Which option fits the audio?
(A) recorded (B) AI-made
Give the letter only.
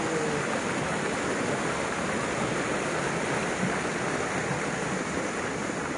A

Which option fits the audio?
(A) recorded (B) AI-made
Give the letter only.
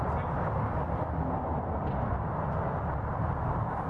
A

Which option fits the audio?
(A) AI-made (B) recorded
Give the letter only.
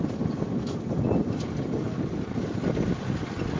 B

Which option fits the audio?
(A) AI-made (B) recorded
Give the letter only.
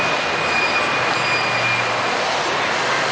B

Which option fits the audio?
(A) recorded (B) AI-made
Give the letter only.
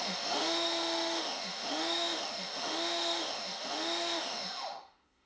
B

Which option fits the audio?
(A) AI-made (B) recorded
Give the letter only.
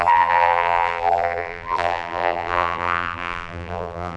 A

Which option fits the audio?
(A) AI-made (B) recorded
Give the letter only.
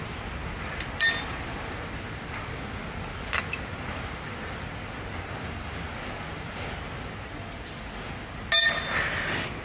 B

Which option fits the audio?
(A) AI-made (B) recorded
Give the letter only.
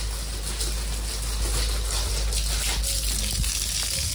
B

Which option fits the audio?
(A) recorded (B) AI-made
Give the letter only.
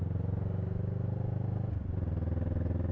A